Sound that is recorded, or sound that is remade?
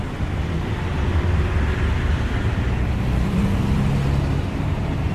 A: remade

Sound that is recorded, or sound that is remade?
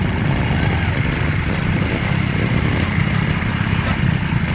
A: recorded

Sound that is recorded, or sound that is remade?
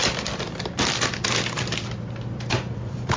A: remade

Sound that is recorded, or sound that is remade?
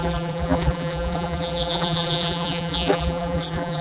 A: remade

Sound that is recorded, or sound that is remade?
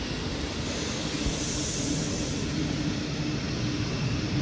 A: recorded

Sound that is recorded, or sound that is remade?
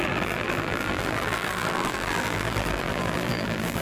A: remade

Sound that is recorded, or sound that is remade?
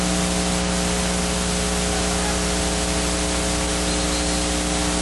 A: recorded